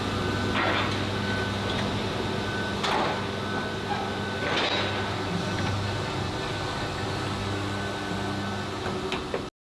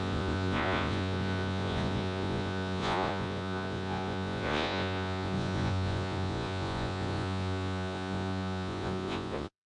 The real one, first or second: first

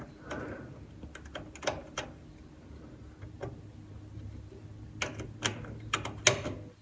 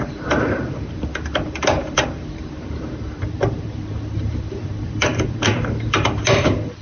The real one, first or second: first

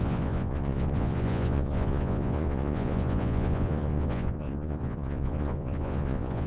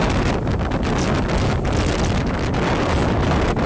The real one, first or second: second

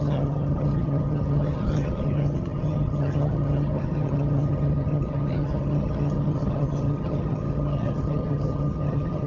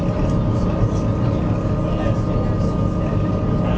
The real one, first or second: second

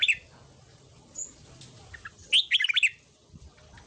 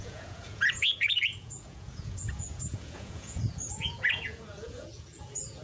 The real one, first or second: first